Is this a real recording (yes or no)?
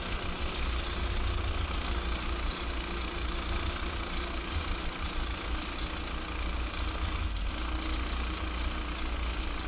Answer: yes